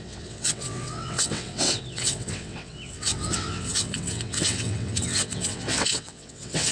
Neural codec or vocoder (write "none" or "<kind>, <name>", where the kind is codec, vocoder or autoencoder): vocoder, WaveNeXt